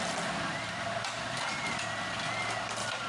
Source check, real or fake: real